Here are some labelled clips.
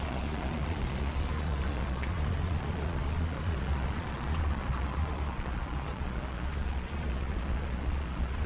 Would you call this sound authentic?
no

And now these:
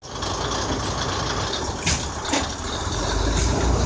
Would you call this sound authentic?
yes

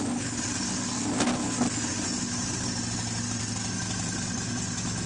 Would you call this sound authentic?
yes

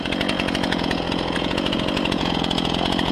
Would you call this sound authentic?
no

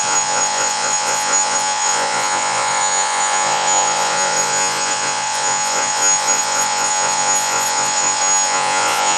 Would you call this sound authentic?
no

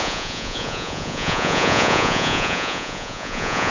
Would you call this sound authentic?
no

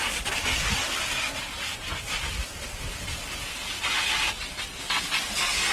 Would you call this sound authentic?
yes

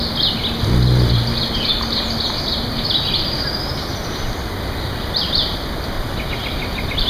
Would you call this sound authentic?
yes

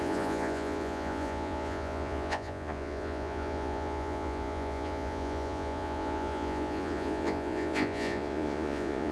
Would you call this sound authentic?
no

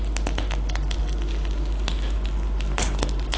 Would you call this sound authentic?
yes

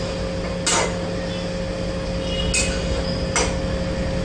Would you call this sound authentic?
yes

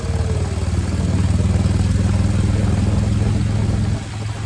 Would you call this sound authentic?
yes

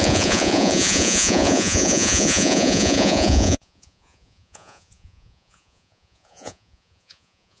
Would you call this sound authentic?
no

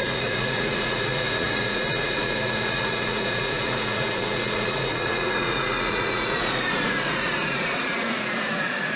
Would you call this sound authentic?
no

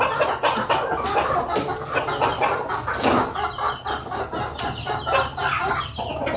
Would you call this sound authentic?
yes